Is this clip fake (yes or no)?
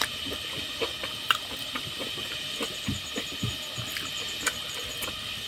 no